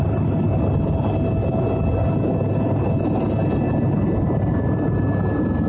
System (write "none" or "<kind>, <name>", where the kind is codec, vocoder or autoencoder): none